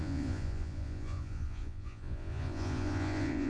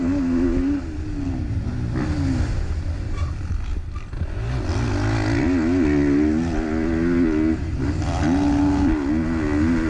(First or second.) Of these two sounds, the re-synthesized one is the first